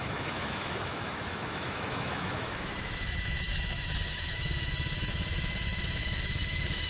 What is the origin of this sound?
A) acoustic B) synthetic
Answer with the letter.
B